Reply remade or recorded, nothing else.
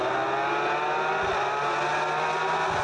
recorded